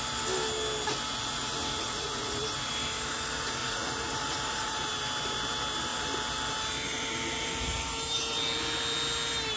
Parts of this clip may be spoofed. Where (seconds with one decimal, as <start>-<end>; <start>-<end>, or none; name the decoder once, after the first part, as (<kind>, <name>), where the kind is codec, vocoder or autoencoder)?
1.1-2.7 (vocoder, Vocos); 3.6-4.9